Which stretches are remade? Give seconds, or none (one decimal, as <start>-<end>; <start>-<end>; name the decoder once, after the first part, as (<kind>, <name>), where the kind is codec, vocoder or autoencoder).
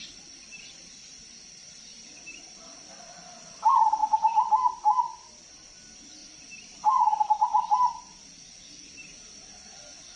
0.0-4.0 (vocoder, BigVGAN v2); 4.7-6.2